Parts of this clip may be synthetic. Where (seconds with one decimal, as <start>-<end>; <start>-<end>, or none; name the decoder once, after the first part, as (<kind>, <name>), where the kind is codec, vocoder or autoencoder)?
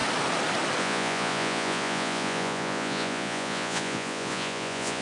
0.8-5.0 (vocoder, Vocos)